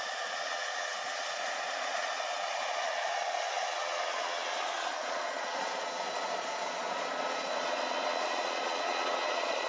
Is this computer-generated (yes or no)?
yes